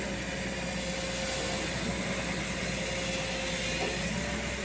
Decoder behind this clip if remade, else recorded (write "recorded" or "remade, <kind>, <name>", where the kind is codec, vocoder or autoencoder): recorded